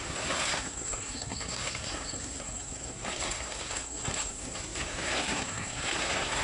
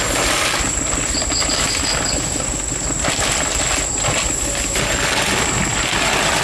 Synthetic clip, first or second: first